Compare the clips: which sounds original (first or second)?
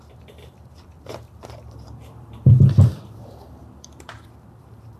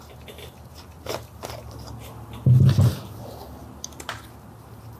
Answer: second